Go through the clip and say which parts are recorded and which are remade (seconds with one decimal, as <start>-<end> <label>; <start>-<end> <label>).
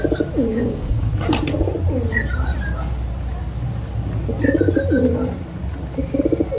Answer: 0.0-0.5 recorded; 0.5-1.1 remade; 1.1-6.6 recorded